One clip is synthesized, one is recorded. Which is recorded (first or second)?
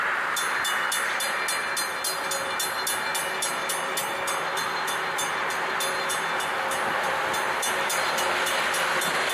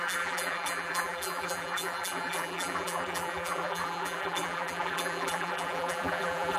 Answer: first